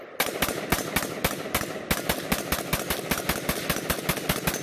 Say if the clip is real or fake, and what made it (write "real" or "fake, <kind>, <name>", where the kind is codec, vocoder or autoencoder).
real